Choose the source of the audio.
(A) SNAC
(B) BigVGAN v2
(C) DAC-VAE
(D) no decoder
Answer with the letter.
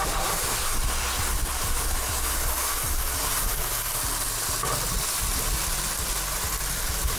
D